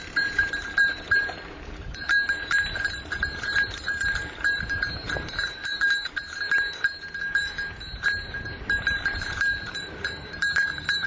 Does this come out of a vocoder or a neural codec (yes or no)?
yes